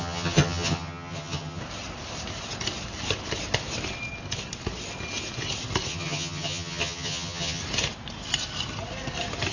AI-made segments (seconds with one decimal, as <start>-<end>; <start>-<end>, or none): 0.0-1.6; 5.9-7.6